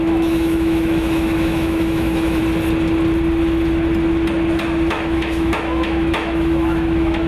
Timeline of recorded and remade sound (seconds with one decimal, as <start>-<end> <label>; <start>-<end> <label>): 0.0-2.4 remade; 2.4-4.9 recorded; 4.9-7.3 remade